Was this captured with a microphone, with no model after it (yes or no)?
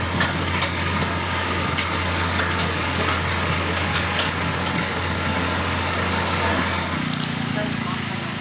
no